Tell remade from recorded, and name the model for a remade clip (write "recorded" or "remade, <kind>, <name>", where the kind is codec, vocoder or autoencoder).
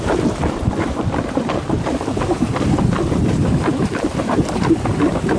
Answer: remade, vocoder, BigVGAN v2